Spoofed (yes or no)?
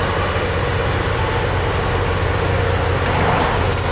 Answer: no